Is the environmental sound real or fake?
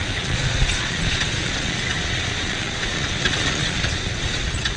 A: fake